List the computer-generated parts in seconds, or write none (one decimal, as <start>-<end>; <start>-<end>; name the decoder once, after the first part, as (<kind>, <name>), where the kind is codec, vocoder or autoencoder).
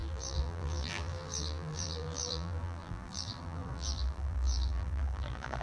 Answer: 0.0-5.6 (vocoder, BigVGAN v2)